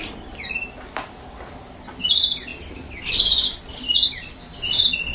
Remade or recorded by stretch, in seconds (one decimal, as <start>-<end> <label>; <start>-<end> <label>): 0.0-5.1 recorded